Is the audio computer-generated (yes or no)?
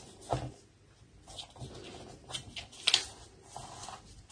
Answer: no